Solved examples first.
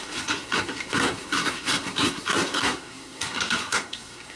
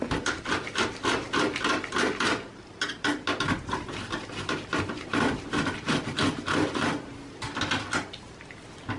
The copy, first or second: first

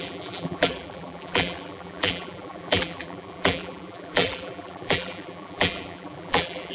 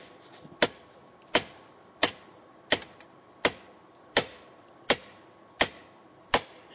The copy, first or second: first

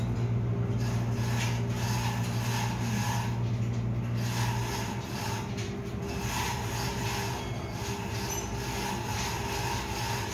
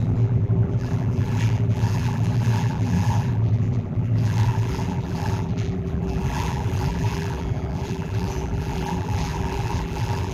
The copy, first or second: second